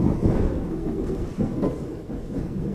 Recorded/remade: remade